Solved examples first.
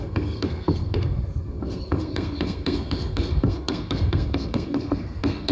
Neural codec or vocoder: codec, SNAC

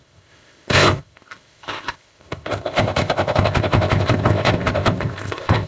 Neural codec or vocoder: codec, ZipCodec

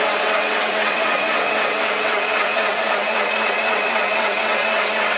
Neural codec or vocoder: vocoder, WaveNeXt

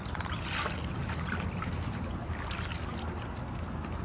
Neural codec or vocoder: none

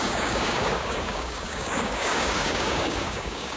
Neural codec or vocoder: codec, DAC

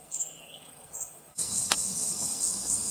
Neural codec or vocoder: codec, SNAC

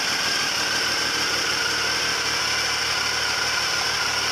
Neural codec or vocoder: none